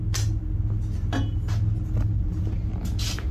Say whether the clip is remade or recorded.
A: recorded